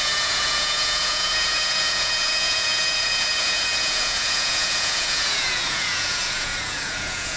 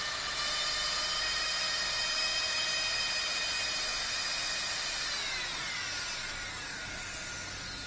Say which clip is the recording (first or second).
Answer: second